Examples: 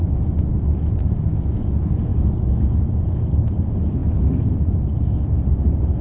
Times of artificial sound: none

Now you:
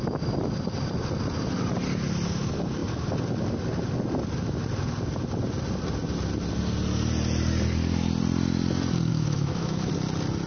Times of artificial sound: 9.1-9.9 (autoencoder, DAC-VAE)

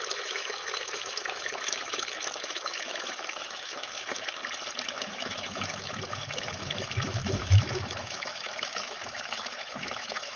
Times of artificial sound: 0.0-4.4 (autoencoder, DAC-VAE); 4.9-10.4

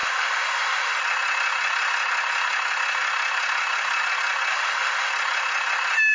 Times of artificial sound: 0.0-1.0 (autoencoder, DAC-VAE); 4.5-5.1